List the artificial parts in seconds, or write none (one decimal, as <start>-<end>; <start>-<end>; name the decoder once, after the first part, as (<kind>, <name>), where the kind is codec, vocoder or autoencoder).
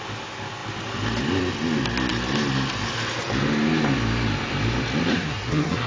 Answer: 5.1-5.9 (codec, SNAC)